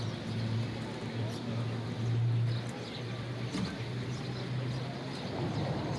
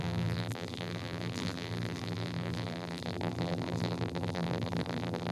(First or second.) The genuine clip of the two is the first